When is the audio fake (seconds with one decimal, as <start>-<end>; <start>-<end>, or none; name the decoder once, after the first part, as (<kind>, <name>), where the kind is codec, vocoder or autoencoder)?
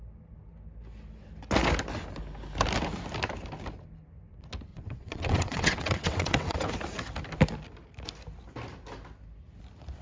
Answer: 4.7-6.7 (vocoder, WaveNeXt)